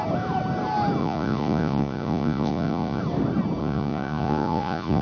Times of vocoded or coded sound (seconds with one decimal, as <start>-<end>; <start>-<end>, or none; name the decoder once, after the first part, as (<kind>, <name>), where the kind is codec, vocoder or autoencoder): 1.0-3.0 (vocoder, Vocos); 3.6-5.0